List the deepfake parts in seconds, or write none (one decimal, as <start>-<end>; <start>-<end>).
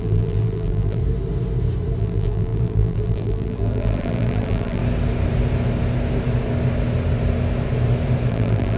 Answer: 0.0-1.0; 2.0-4.8; 8.3-8.8